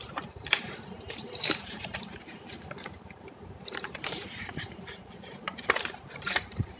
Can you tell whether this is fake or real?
fake